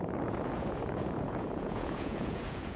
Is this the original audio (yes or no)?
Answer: no